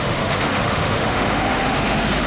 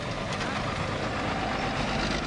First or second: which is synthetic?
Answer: first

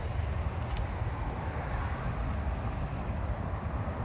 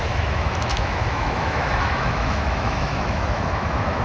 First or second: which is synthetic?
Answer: second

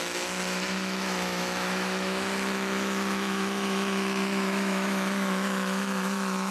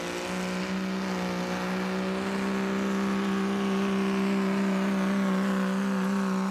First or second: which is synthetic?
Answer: first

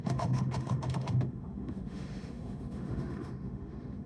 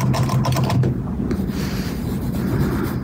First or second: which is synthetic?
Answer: first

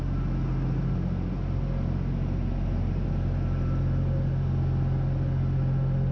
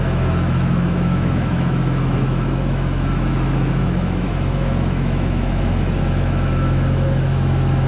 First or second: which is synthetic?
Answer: second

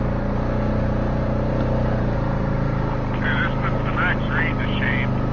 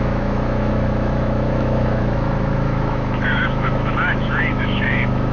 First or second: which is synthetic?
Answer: second